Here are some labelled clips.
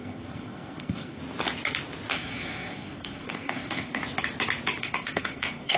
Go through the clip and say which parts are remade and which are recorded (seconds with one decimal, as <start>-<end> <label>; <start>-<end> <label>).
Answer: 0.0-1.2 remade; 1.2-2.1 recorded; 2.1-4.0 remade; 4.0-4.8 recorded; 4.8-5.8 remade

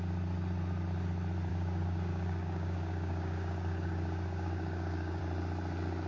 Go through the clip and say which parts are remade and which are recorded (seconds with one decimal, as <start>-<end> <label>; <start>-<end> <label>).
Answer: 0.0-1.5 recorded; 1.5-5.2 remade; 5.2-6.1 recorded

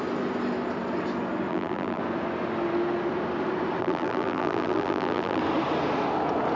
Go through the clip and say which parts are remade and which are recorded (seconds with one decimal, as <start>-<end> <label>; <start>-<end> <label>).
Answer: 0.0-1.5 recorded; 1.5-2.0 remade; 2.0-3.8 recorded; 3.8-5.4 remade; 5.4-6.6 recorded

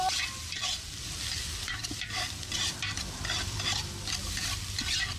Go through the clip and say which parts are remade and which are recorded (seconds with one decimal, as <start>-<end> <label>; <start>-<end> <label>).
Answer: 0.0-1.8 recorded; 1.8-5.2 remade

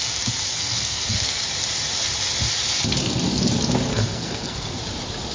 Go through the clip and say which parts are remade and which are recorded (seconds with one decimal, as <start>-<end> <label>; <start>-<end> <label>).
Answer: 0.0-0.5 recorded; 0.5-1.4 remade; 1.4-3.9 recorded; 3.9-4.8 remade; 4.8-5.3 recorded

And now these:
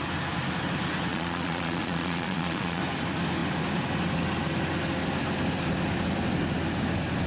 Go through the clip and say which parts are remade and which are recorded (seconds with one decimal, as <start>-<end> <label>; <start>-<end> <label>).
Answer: 0.0-1.1 recorded; 1.1-2.8 remade; 2.8-7.3 recorded